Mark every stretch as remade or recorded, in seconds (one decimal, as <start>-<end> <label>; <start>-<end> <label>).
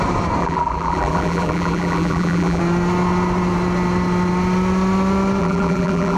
0.0-0.4 recorded; 0.4-2.6 remade; 2.6-5.4 recorded; 5.4-6.2 remade